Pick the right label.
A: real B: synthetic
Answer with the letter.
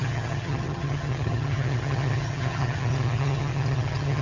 B